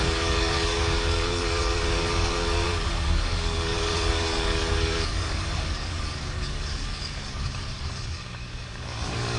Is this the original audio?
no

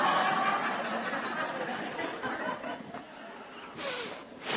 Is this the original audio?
yes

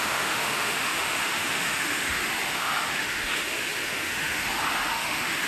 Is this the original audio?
no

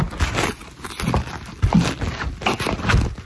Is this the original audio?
yes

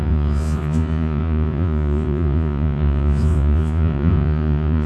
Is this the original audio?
no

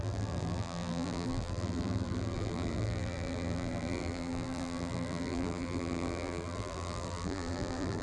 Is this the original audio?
no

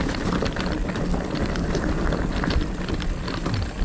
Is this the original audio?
yes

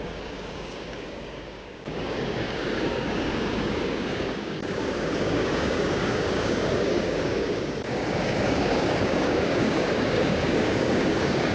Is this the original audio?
no